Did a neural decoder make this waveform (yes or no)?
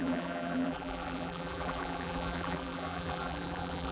yes